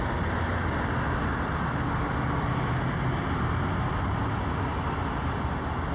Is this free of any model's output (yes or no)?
yes